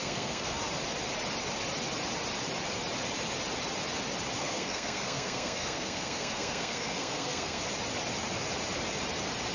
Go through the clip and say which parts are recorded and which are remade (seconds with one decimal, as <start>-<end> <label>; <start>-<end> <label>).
0.0-0.6 remade; 0.6-4.4 recorded; 4.4-7.6 remade; 7.6-9.5 recorded